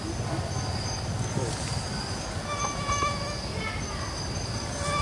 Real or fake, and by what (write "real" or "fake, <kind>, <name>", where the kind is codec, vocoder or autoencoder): real